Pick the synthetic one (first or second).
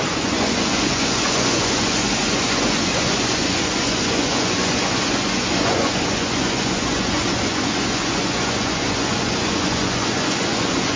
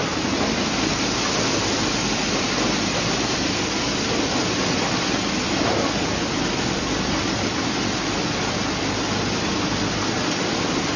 first